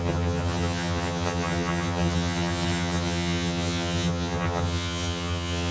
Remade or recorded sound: remade